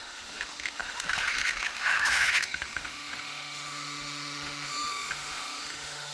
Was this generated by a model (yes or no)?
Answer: yes